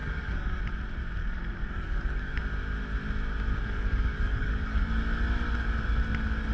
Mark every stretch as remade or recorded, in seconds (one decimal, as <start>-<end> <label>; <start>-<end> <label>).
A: 0.0-0.6 remade; 0.6-1.2 recorded; 1.2-2.4 remade; 2.4-3.6 recorded; 3.6-4.9 remade; 4.9-6.5 recorded